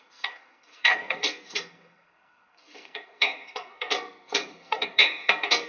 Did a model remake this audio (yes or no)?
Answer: yes